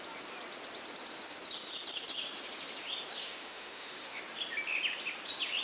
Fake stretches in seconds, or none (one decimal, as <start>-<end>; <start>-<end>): 3.2-4.2